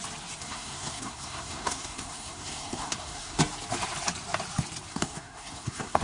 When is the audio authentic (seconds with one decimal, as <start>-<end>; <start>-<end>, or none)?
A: 0.0-0.4; 3.4-4.9